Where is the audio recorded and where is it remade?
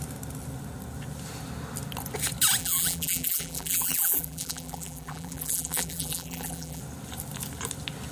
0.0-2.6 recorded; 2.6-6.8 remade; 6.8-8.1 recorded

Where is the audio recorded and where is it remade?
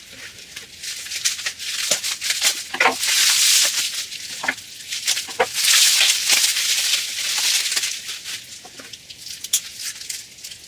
0.0-10.7 recorded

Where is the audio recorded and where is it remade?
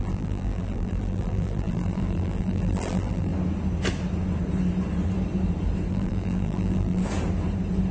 0.0-3.3 remade; 3.3-5.9 recorded; 5.9-7.0 remade; 7.0-7.9 recorded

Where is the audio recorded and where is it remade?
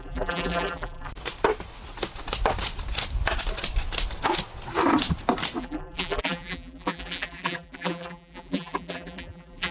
0.0-1.1 remade; 1.1-5.6 recorded; 5.6-9.7 remade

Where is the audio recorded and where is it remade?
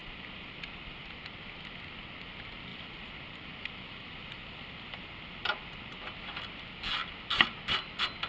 0.0-1.2 remade; 1.2-2.7 recorded; 2.7-6.0 remade; 6.0-8.3 recorded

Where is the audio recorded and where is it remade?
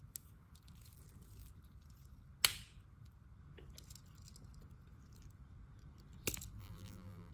0.0-6.6 recorded; 6.6-7.3 remade